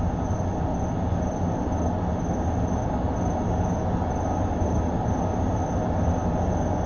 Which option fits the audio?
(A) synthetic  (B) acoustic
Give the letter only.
B